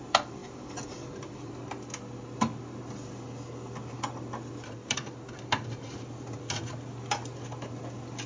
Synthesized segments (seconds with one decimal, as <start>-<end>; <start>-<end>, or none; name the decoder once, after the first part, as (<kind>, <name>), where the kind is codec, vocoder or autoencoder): 0.4-1.5 (vocoder, BigVGAN v2)